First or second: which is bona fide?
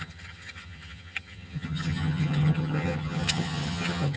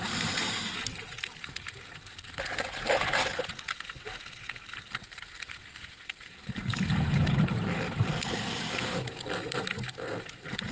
second